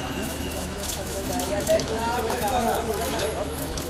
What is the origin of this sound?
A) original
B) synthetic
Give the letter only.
B